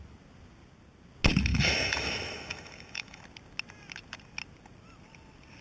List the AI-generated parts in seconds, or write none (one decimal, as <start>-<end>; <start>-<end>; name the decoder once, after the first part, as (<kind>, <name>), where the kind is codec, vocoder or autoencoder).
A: 1.5-3.2 (autoencoder, DAC-VAE)